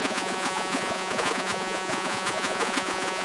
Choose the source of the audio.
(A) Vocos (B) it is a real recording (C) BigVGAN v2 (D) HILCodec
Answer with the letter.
A